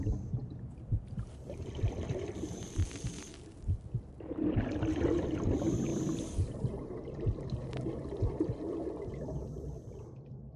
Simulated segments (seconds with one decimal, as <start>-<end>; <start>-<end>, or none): 0.4-3.1; 5.9-10.6